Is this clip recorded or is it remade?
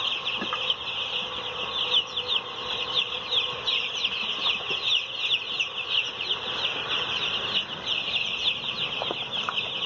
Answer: recorded